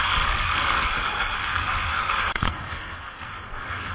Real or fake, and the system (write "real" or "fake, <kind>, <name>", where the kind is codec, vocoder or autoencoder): fake, codec, SNAC